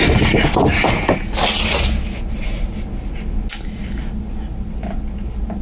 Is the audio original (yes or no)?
yes